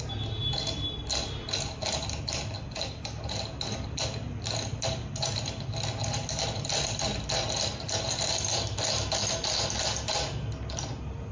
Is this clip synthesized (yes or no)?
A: no